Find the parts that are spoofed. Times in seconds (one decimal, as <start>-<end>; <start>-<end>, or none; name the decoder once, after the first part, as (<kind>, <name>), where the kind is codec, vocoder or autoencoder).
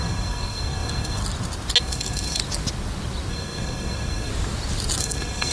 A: 0.0-1.2 (codec, SNAC); 1.8-2.4; 3.3-4.3; 5.0-5.5